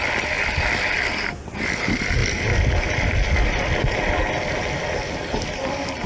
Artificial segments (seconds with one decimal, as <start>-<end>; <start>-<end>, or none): none